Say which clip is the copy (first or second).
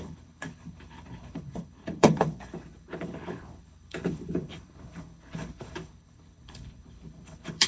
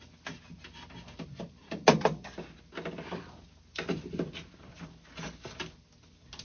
first